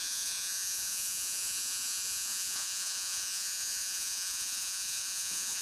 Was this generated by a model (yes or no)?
yes